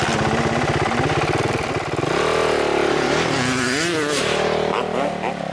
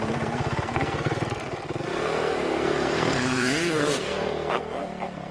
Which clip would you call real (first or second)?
first